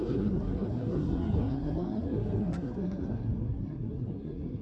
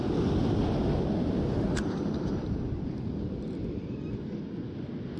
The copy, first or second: first